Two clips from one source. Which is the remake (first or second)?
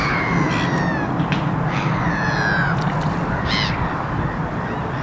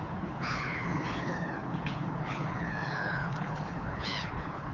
second